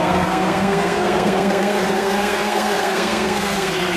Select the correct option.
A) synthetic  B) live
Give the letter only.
A